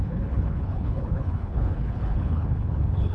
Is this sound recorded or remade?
remade